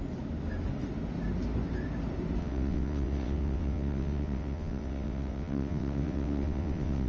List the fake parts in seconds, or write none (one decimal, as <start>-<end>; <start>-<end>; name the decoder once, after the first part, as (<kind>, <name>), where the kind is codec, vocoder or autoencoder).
2.4-7.1 (vocoder, WaveNeXt)